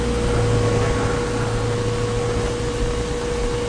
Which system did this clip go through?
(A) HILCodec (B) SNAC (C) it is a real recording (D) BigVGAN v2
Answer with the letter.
C